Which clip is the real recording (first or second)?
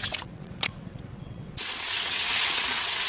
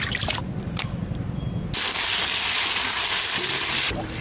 second